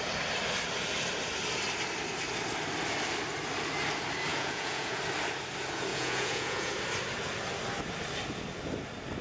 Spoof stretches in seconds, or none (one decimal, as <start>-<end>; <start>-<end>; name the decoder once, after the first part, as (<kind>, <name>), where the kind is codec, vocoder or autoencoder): 4.3-5.0 (vocoder, Vocos); 5.9-6.7